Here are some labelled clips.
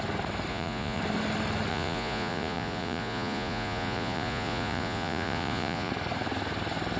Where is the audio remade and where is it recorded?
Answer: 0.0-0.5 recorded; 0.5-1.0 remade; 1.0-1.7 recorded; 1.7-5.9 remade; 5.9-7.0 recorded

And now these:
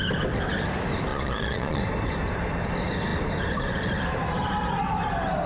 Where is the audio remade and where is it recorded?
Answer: 0.0-1.1 recorded; 1.1-1.8 remade; 1.8-5.5 recorded

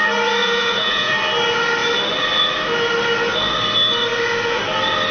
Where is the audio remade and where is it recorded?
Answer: 0.0-0.4 recorded; 0.4-1.1 remade; 1.1-5.1 recorded

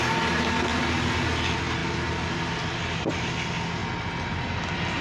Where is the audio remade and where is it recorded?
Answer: 0.0-5.0 recorded

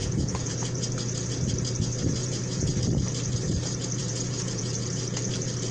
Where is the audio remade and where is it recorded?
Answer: 0.0-0.5 remade; 0.5-2.2 recorded; 2.2-2.7 remade; 2.7-4.0 recorded; 4.0-4.7 remade; 4.7-5.7 recorded

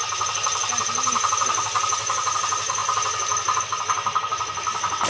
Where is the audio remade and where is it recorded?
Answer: 0.0-5.1 recorded

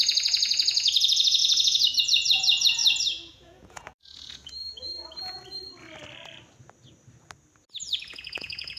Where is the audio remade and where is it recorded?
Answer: 0.0-2.8 remade; 2.8-3.3 recorded; 3.3-4.9 remade; 4.9-7.8 recorded; 7.8-8.8 remade

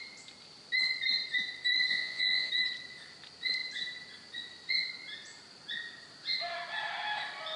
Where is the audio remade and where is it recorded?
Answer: 0.0-1.9 recorded; 1.9-2.5 remade; 2.5-7.6 recorded